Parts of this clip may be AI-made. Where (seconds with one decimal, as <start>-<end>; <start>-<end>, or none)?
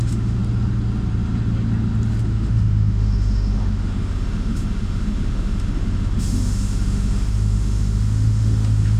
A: 0.0-0.4; 2.2-9.0